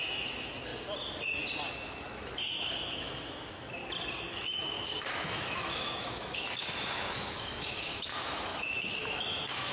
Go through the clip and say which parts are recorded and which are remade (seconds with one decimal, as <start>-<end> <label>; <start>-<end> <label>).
0.0-0.7 remade; 0.7-1.7 recorded; 1.7-3.8 remade; 3.8-4.3 recorded; 4.3-9.7 remade